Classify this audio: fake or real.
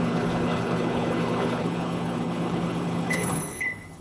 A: fake